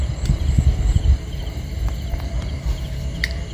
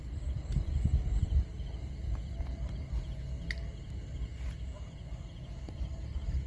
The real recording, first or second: second